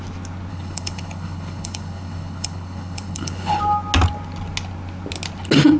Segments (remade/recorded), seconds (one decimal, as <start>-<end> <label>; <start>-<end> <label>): 0.0-0.5 recorded; 0.5-3.6 remade; 3.6-5.8 recorded